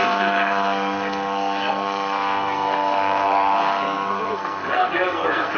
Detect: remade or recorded remade